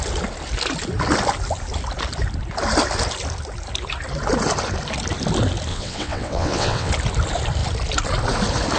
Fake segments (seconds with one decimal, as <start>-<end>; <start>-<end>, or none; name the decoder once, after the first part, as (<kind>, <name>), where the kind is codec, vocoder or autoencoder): 5.7-6.9 (vocoder, WaveNeXt)